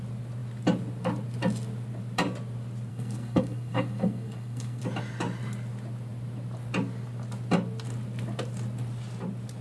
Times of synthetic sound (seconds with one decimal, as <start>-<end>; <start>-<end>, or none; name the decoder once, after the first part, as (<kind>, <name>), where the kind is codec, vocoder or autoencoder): 2.9-4.8 (codec, SNAC)